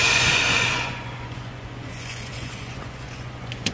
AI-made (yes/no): yes